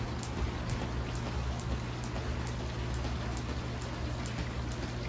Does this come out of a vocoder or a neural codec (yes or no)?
no